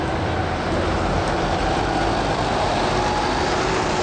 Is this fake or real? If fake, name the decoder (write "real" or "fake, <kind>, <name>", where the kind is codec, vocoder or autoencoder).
real